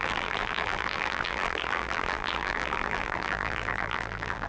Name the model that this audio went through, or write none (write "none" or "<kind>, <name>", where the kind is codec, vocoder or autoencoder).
vocoder, BigVGAN v2